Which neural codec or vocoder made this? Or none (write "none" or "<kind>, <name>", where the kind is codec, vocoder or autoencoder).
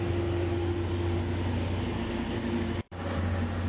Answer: none